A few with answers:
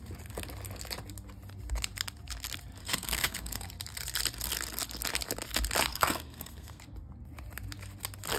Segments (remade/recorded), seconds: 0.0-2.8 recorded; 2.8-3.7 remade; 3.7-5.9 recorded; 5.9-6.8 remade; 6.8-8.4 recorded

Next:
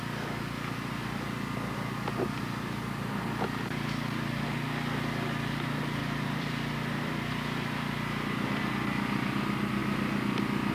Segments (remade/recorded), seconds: 0.0-6.0 recorded; 6.0-7.3 remade; 7.3-10.7 recorded

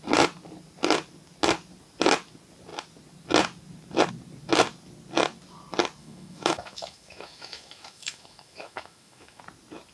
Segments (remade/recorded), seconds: 0.0-6.0 recorded; 6.0-9.4 remade; 9.4-9.9 recorded